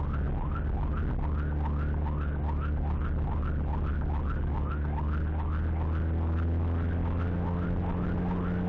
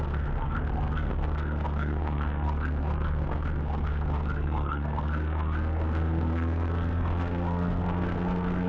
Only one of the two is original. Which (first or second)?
first